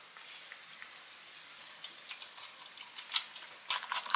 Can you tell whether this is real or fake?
real